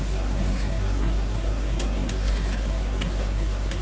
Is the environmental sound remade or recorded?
remade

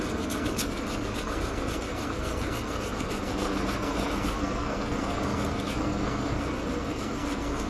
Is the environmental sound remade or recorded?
remade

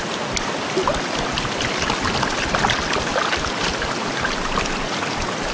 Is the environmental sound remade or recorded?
recorded